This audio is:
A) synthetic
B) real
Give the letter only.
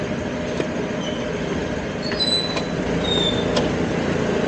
B